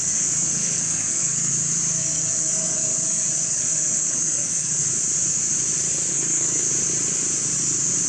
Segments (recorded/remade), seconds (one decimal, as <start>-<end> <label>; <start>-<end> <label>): 0.0-1.5 remade; 1.5-2.0 recorded; 2.0-4.9 remade; 4.9-6.1 recorded; 6.1-6.7 remade; 6.7-8.1 recorded